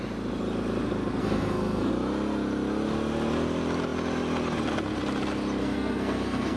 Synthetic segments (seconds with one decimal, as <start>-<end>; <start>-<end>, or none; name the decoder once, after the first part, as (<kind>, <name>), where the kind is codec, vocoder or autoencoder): 1.2-1.9 (codec, SNAC); 5.6-6.6